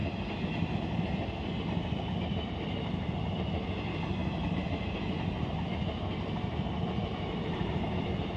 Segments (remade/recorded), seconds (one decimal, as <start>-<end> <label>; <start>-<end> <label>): 0.0-8.4 recorded

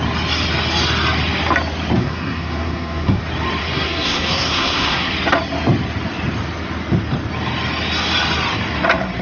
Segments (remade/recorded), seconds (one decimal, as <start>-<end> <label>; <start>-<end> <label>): 0.0-2.0 recorded; 2.0-3.2 remade; 3.2-3.6 recorded; 3.6-5.1 remade; 5.1-9.2 recorded

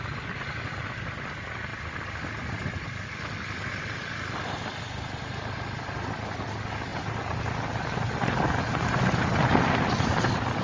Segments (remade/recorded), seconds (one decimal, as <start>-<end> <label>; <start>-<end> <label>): 0.0-10.6 recorded

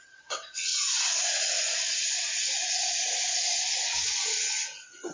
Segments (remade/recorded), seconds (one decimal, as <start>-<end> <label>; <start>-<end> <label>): 0.0-0.7 remade; 0.7-3.8 recorded; 3.8-5.1 remade